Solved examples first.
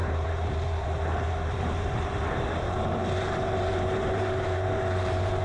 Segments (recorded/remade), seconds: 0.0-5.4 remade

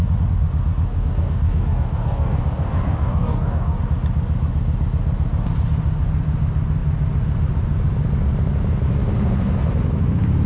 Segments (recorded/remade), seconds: 0.0-0.9 recorded; 0.9-3.8 remade; 3.8-10.5 recorded

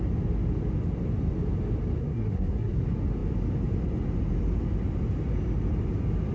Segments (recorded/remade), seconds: 0.0-2.0 recorded; 2.0-2.8 remade; 2.8-6.3 recorded

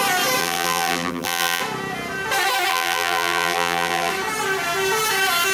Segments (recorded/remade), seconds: 0.0-0.4 recorded; 0.4-1.6 remade; 1.6-2.7 recorded; 2.7-4.1 remade; 4.1-5.5 recorded

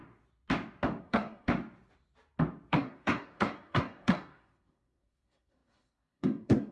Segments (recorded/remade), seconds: 0.0-1.0 recorded; 1.0-1.5 remade; 1.5-2.7 recorded; 2.7-6.7 remade

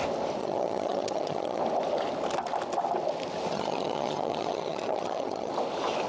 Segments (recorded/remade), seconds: 0.0-0.4 recorded; 0.4-1.6 remade; 1.6-3.5 recorded; 3.5-5.5 remade; 5.5-6.1 recorded